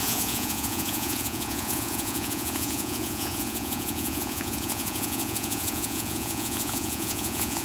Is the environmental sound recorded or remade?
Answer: remade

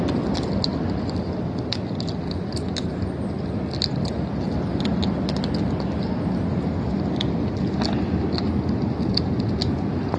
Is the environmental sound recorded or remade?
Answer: recorded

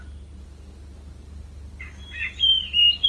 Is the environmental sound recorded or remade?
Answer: recorded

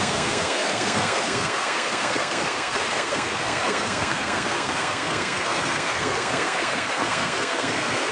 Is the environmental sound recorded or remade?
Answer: remade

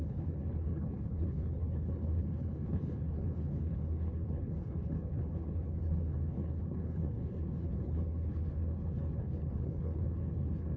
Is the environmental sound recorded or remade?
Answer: remade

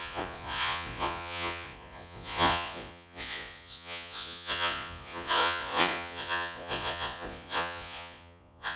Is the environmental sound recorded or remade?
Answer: remade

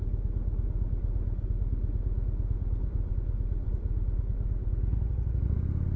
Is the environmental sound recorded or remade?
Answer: recorded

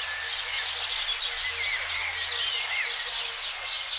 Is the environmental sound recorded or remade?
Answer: recorded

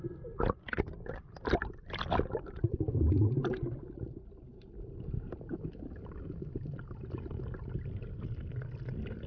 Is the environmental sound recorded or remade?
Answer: recorded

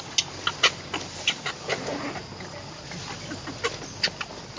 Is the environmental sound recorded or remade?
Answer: recorded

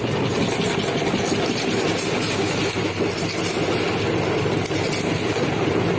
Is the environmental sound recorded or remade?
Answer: recorded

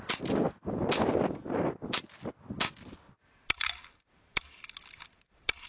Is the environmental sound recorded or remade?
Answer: recorded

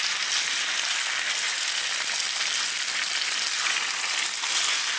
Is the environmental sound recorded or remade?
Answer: recorded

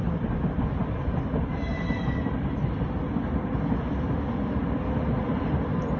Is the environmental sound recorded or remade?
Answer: recorded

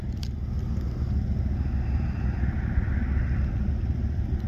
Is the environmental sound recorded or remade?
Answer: recorded